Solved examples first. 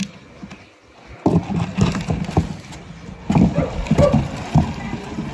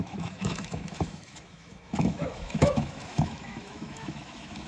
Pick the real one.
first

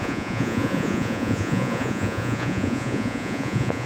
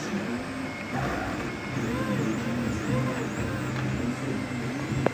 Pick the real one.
second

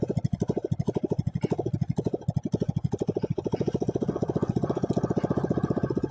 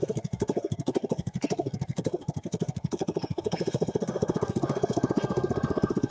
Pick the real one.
first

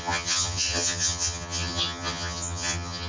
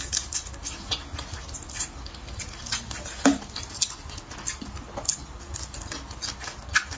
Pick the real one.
second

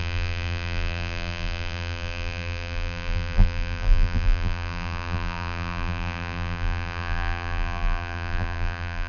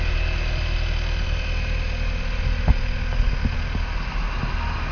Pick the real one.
second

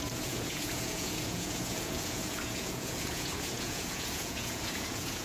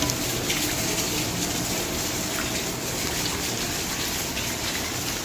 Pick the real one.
second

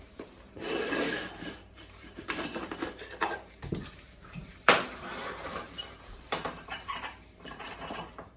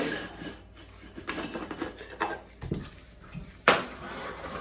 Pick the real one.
second